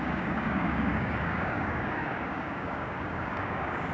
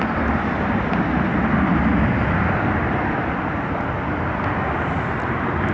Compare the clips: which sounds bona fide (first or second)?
second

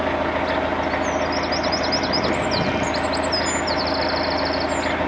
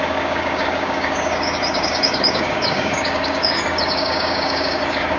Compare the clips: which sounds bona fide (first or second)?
first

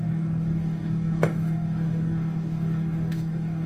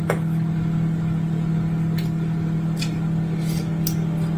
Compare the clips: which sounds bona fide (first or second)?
second